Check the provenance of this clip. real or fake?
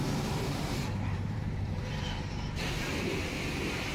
fake